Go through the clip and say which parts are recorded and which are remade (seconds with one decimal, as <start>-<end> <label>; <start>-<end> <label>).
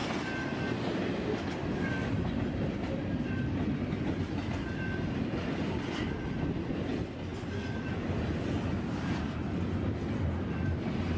0.0-11.2 recorded